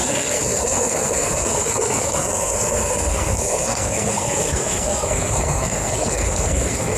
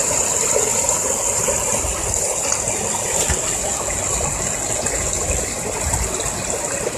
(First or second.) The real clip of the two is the second